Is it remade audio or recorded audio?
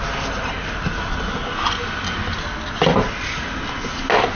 recorded